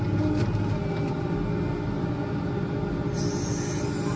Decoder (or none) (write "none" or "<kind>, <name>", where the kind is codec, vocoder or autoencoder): none